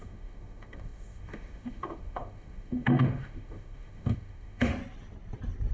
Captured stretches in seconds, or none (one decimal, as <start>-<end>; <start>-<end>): 4.7-5.7